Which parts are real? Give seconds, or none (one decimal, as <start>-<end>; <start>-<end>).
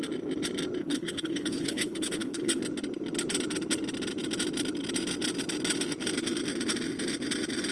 0.0-0.8; 2.6-7.7